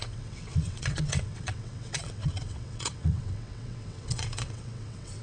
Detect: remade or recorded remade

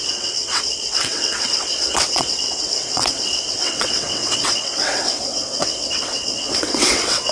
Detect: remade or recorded remade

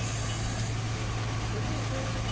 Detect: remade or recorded recorded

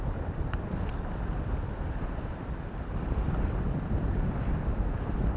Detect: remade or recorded recorded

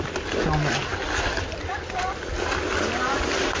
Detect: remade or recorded recorded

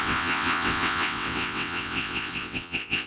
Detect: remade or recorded remade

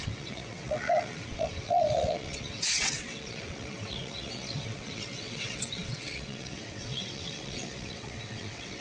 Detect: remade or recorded remade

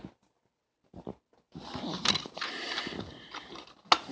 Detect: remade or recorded recorded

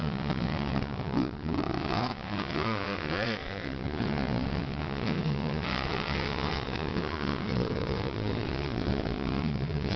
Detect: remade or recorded remade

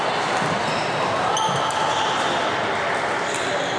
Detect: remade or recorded recorded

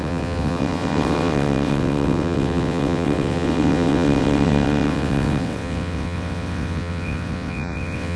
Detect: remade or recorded remade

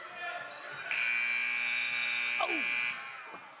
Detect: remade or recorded recorded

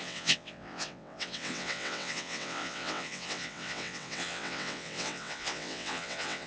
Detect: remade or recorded remade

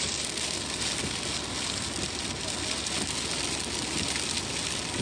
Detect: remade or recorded recorded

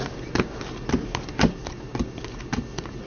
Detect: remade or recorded recorded